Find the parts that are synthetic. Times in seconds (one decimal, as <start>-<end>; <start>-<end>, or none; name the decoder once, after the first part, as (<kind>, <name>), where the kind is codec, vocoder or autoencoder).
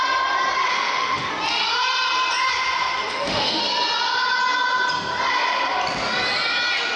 0.7-1.3 (autoencoder, DAC-VAE); 3.1-3.6